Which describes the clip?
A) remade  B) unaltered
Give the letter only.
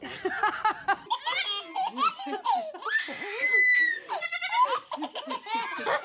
B